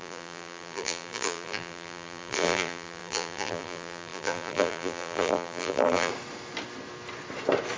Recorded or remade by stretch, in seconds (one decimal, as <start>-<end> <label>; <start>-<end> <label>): 0.0-6.1 remade; 6.1-7.8 recorded